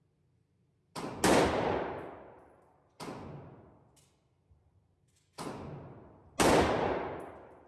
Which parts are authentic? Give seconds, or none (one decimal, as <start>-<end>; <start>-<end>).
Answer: 0.0-7.7